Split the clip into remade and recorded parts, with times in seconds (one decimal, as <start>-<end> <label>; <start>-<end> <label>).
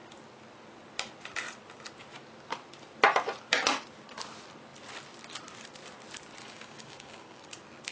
0.0-6.4 recorded; 6.4-7.4 remade; 7.4-7.9 recorded